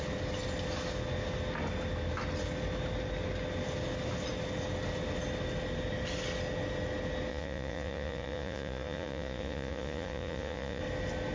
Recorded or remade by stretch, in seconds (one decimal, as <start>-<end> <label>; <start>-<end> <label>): 0.0-7.3 recorded; 7.3-10.8 remade; 10.8-11.3 recorded